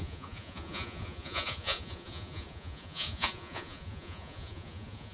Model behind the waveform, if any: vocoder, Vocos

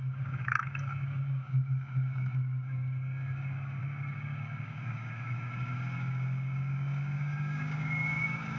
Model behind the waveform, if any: codec, DAC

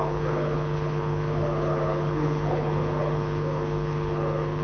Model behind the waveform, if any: codec, HILCodec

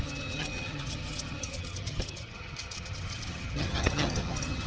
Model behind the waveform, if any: vocoder, HiFi-GAN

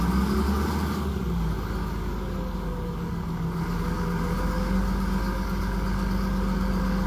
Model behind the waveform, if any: codec, DAC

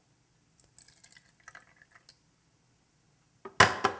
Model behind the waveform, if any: none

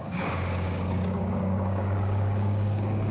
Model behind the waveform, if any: codec, DAC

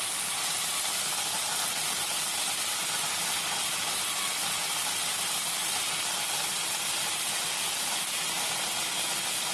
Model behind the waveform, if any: none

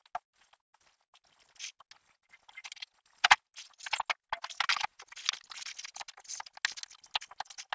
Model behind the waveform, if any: none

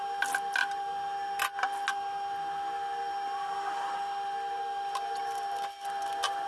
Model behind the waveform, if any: none